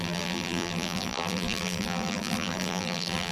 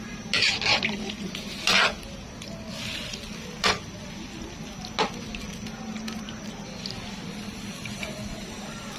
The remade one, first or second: first